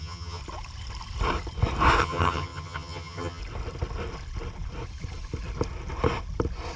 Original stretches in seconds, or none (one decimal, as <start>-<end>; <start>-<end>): 0.4-2.0; 3.4-6.8

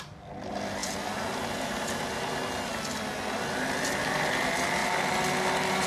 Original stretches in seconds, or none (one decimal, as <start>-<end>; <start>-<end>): 0.0-5.9

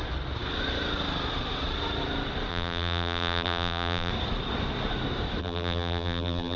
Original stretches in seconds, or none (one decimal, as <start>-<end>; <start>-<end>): 0.0-2.5; 4.1-5.4